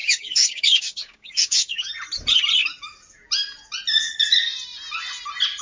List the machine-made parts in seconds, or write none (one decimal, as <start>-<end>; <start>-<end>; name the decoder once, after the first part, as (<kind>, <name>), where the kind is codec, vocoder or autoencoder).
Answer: 0.0-1.9 (codec, DAC)